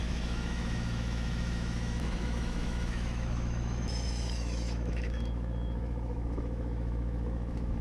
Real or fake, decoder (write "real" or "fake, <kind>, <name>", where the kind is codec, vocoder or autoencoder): fake, autoencoder, DAC-VAE